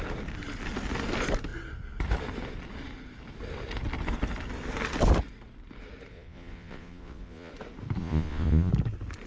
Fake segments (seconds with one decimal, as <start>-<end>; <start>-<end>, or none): 6.1-7.5; 8.0-8.7